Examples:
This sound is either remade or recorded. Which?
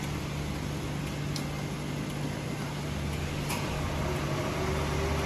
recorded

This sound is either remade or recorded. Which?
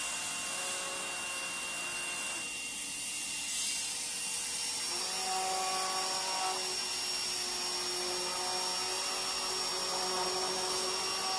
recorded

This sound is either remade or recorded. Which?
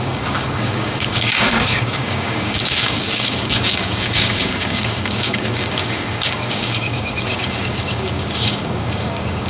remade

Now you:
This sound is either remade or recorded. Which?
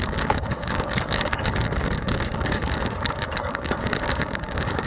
remade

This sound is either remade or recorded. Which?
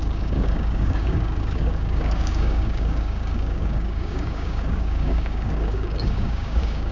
remade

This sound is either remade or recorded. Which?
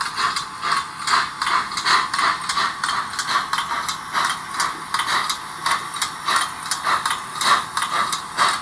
recorded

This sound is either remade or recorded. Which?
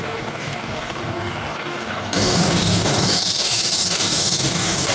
remade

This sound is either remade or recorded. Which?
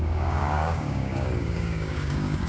remade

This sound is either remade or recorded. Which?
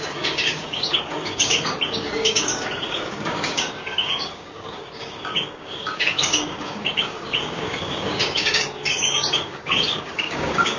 remade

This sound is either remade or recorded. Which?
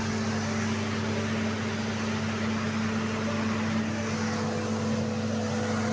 recorded